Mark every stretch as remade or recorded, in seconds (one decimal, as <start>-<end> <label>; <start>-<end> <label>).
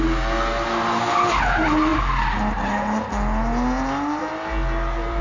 0.0-5.2 recorded